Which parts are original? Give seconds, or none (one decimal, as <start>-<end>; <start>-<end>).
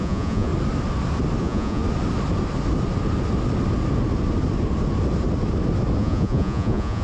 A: 0.5-1.4; 1.8-6.0